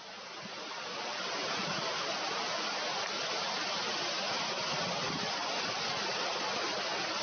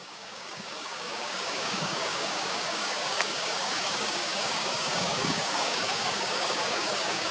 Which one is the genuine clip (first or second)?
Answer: first